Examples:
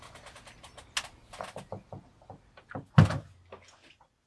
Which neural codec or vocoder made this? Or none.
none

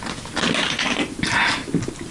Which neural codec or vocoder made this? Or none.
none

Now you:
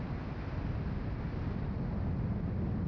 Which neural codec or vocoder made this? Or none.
none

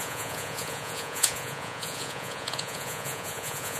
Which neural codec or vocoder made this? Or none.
vocoder, Vocos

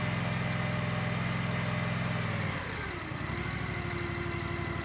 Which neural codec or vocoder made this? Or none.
none